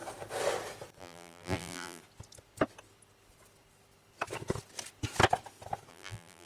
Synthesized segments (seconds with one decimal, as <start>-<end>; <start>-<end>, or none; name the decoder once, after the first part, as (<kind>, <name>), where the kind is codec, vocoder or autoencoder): 1.0-2.0 (vocoder, BigVGAN v2); 5.9-6.5